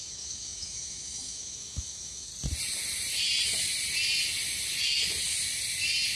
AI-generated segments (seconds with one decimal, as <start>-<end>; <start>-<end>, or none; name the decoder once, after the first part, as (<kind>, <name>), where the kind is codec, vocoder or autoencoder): 0.0-2.3 (autoencoder, DAC-VAE)